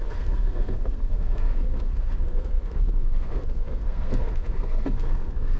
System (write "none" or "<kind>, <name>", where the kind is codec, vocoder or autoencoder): codec, SNAC